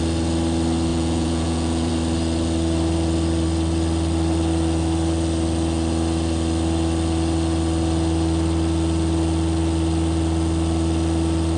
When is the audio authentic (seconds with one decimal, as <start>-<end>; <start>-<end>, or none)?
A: 0.0-0.9; 1.9-11.6